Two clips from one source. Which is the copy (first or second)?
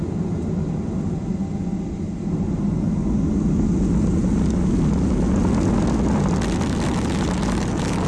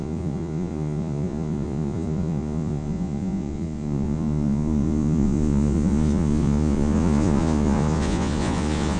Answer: second